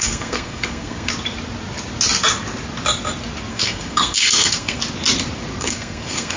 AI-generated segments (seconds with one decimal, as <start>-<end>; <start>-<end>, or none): 0.0-1.1; 3.5-4.8; 5.6-6.4